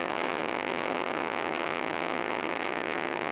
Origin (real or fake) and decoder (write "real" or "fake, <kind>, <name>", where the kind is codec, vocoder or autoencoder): fake, vocoder, HiFi-GAN